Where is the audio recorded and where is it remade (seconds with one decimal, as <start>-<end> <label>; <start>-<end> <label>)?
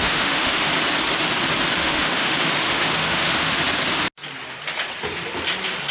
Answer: 0.0-0.7 remade; 0.7-1.8 recorded; 1.8-3.6 remade; 3.6-5.9 recorded